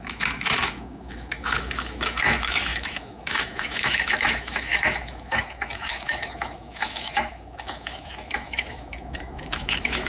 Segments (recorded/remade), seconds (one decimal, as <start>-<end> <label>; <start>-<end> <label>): 0.0-10.1 remade